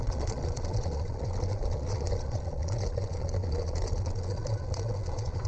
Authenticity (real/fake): fake